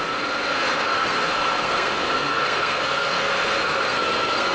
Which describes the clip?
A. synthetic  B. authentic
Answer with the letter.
A